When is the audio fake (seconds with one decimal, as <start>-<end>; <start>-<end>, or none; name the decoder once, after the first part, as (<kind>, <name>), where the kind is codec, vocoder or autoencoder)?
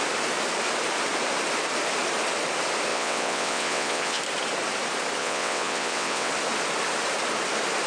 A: 2.9-4.2 (vocoder, WaveNeXt); 5.2-6.3